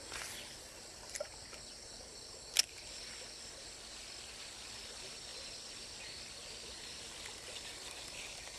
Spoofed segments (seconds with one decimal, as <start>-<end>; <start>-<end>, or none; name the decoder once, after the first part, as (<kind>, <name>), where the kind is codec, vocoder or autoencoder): none